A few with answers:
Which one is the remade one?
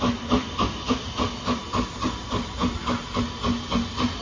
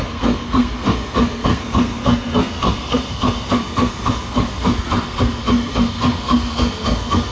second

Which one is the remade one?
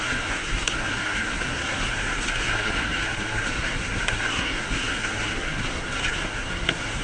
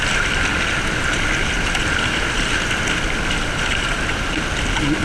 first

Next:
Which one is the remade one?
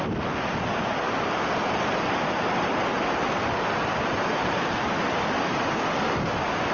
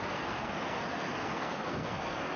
second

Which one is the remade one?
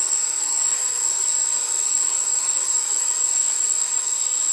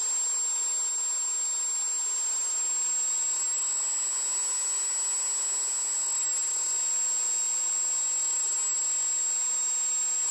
first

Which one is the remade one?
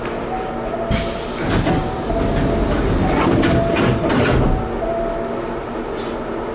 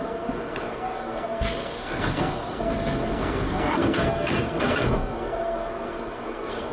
second